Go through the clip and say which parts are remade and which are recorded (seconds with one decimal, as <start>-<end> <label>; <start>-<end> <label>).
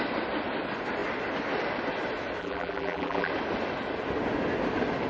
0.0-2.4 recorded; 2.4-3.3 remade; 3.3-5.1 recorded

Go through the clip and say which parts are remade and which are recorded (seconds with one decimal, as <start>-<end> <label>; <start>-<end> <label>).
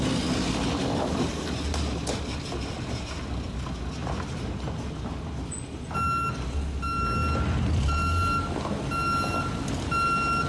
0.0-10.5 recorded